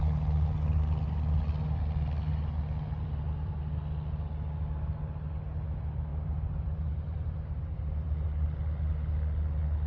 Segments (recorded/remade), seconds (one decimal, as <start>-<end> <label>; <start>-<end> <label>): 0.0-6.1 recorded; 6.1-8.1 remade; 8.1-9.9 recorded